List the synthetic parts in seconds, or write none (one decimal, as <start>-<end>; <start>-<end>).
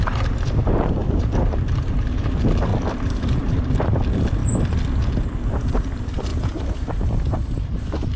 0.0-2.7; 3.4-4.4; 5.5-8.2